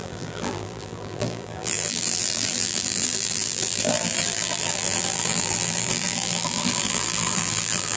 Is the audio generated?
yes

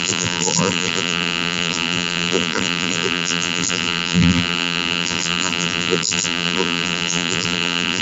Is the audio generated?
yes